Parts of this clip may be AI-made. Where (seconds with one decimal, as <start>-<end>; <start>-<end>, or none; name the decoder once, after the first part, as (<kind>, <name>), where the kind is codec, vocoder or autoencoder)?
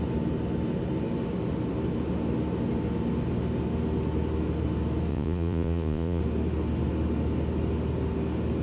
5.1-6.2 (vocoder, Vocos)